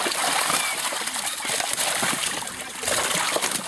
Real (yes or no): yes